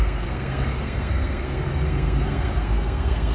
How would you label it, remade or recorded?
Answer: remade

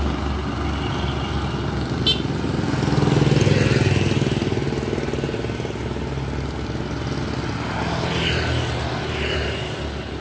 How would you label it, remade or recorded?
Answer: recorded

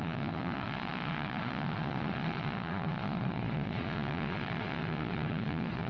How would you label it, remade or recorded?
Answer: remade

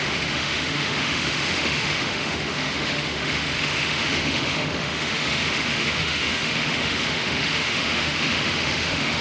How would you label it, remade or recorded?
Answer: remade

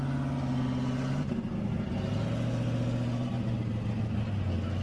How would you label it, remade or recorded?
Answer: recorded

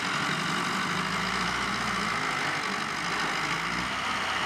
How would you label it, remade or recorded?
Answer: recorded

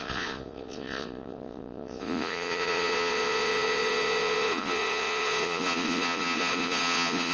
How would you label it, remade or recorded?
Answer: remade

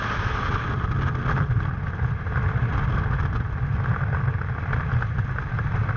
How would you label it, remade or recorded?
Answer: recorded